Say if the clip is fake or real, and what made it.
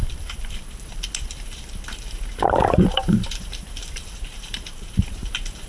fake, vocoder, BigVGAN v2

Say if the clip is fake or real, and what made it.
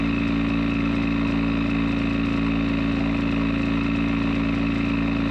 real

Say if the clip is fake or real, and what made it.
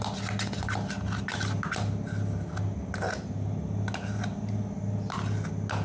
real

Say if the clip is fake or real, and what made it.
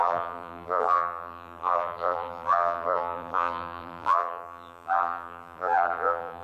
fake, vocoder, BigVGAN v2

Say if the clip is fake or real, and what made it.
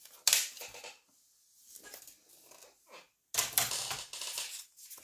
real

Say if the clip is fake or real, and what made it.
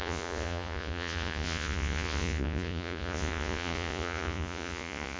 fake, vocoder, Vocos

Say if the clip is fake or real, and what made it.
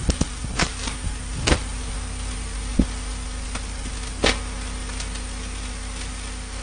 real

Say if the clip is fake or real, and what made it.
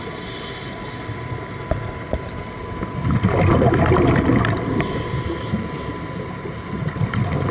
real